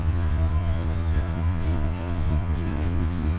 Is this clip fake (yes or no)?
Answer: yes